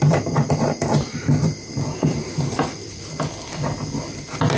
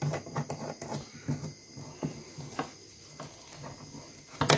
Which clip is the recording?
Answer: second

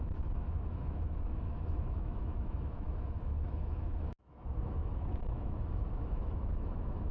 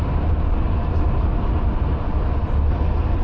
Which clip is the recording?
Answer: second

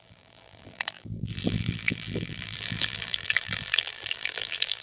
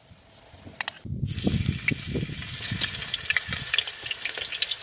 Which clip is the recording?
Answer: second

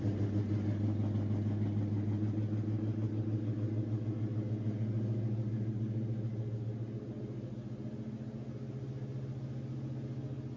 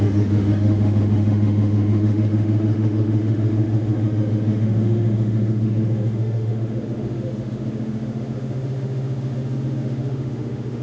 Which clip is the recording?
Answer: first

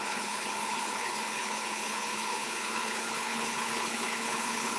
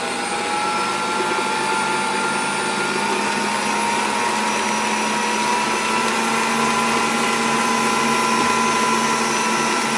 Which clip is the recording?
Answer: second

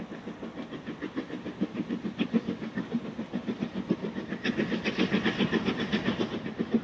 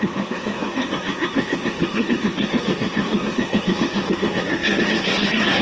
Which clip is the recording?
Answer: first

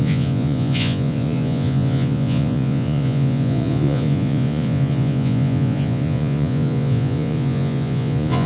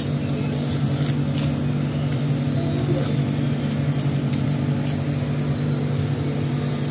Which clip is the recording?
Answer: second